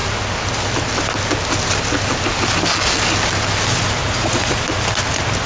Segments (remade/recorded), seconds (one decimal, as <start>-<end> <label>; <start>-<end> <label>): 0.0-4.0 recorded; 4.0-4.6 remade; 4.6-5.5 recorded